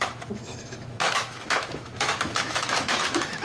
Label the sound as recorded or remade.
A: remade